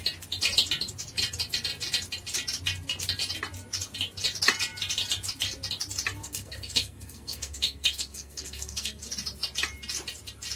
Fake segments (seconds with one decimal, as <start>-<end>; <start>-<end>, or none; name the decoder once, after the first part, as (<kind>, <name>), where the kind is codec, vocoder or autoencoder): 6.2-9.0 (codec, SNAC)